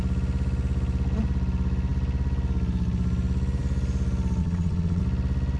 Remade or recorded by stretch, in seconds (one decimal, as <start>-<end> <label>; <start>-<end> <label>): 0.0-4.4 recorded; 4.4-5.0 remade; 5.0-5.6 recorded